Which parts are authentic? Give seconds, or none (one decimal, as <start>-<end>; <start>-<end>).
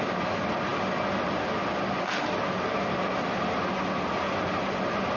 0.0-5.2